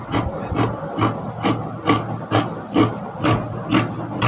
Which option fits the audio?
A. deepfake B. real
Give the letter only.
B